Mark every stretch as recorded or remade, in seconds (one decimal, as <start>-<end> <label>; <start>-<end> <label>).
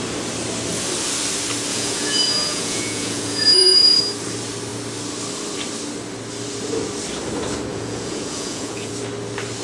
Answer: 0.0-1.7 recorded; 1.7-4.0 remade; 4.0-7.7 recorded; 7.7-8.9 remade; 8.9-9.6 recorded